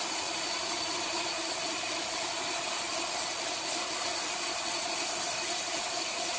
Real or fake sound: real